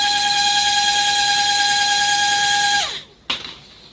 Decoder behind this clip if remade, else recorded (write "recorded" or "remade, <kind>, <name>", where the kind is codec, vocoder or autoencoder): recorded